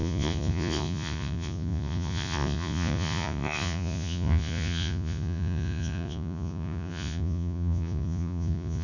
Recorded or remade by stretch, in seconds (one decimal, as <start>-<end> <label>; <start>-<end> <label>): 0.0-8.8 remade